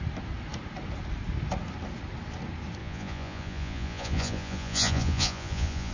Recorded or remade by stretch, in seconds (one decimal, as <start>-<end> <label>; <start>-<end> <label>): 0.0-2.8 recorded; 2.8-5.9 remade